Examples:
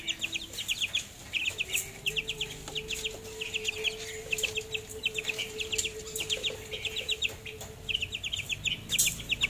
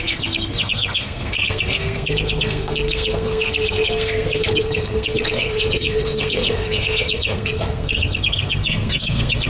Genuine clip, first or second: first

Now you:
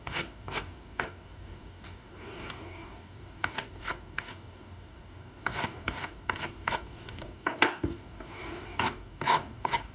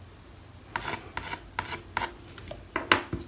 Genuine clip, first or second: second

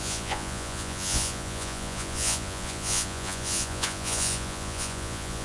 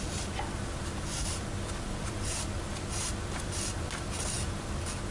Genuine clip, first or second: second